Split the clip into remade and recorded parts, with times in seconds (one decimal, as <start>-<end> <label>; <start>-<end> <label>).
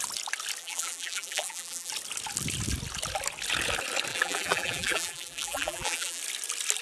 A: 0.0-0.6 recorded; 0.6-1.9 remade; 1.9-4.1 recorded; 4.1-6.2 remade; 6.2-6.8 recorded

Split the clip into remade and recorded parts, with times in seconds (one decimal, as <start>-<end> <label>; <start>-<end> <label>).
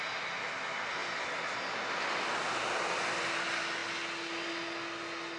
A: 0.0-5.4 recorded